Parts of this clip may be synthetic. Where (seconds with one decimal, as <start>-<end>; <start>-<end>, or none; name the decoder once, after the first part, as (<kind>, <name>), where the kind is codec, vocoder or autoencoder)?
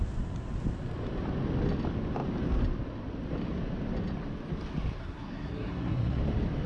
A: 5.0-6.2 (codec, SNAC)